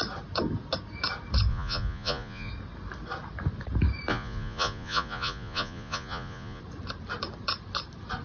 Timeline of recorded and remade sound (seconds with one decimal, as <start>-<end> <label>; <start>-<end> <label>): 0.0-1.5 recorded; 1.5-2.5 remade; 2.5-4.1 recorded; 4.1-6.6 remade; 6.6-8.2 recorded